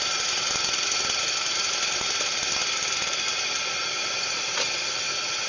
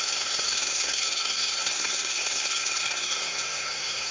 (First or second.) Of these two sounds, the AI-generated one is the second